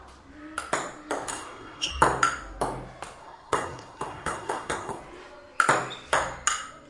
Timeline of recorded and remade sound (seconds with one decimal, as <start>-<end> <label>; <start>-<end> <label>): 0.0-1.3 recorded; 1.3-1.9 remade; 1.9-3.2 recorded; 3.2-5.0 remade; 5.0-6.9 recorded